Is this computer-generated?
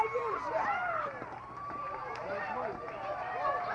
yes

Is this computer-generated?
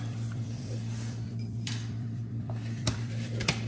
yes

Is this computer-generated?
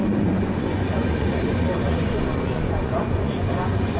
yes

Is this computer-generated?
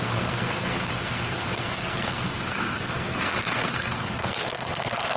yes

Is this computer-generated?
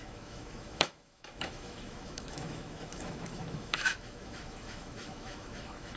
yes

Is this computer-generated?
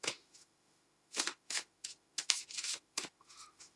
yes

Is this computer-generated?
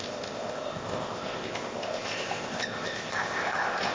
yes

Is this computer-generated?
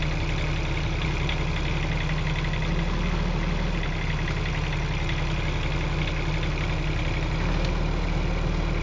no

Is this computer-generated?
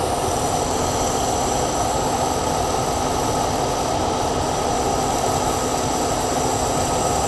no